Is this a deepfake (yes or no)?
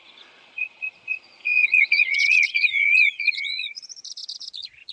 yes